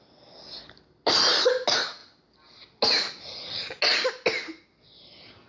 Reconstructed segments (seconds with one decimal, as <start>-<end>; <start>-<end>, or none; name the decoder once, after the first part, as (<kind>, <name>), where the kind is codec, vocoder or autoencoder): none